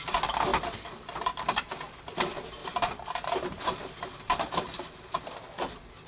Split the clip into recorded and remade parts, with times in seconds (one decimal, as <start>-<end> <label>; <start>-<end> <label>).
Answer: 0.0-2.6 recorded; 2.6-5.0 remade; 5.0-6.1 recorded